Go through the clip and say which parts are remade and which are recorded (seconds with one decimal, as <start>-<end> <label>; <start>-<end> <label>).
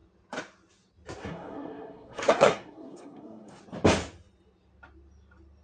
0.0-1.2 recorded; 1.2-3.6 remade; 3.6-5.6 recorded